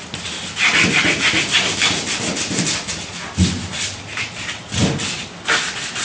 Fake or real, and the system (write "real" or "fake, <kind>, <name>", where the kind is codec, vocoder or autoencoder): real